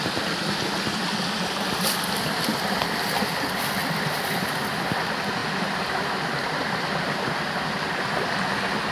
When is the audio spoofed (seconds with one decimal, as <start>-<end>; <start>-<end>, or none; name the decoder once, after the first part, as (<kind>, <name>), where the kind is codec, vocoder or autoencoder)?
none